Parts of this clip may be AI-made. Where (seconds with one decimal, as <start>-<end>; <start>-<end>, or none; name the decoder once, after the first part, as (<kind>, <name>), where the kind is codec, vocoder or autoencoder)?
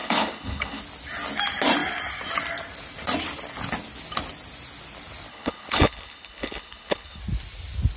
0.0-0.8 (codec, HILCodec); 5.3-7.2